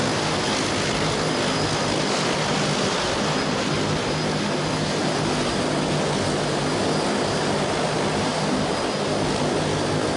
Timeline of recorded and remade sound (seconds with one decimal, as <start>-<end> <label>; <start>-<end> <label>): 0.0-10.2 recorded